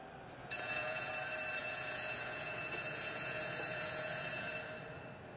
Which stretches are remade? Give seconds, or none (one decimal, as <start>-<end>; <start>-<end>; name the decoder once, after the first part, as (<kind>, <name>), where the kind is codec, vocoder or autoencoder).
0.4-1.1 (vocoder, Vocos); 1.6-4.5

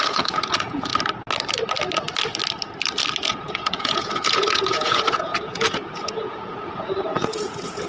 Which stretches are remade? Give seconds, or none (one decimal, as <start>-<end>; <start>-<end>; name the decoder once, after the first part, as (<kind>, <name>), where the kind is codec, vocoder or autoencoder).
0.0-0.9 (vocoder, Vocos); 3.3-7.9

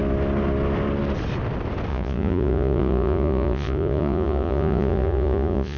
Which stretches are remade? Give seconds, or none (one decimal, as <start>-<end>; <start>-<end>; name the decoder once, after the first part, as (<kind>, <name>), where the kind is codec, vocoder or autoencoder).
1.9-5.8 (vocoder, Vocos)

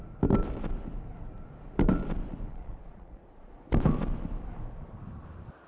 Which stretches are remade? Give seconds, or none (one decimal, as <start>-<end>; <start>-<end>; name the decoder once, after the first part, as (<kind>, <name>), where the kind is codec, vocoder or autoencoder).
2.5-3.5 (vocoder, Vocos)

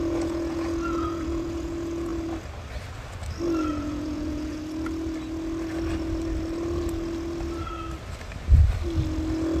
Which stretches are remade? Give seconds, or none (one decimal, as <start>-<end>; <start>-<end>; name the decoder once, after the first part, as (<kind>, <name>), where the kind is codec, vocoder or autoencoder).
0.0-2.1 (vocoder, Vocos); 3.7-4.6